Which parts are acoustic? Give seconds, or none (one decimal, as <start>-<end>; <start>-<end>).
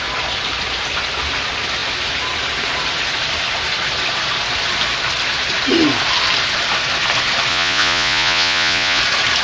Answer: 0.0-7.5; 9.0-9.4